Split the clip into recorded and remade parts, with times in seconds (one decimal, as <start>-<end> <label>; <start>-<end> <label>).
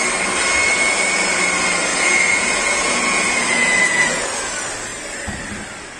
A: 0.0-1.9 recorded; 1.9-4.2 remade; 4.2-6.0 recorded